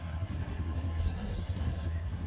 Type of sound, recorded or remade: remade